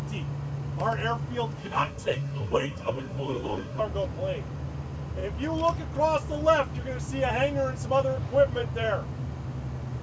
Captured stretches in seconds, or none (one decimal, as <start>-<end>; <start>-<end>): 0.0-1.6; 3.8-10.0